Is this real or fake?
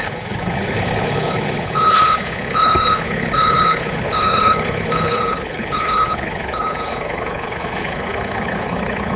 fake